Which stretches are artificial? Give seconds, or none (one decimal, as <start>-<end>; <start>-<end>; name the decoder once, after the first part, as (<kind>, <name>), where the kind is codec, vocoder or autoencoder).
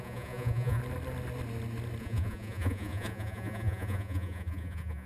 0.0-0.8 (vocoder, Vocos); 2.0-5.1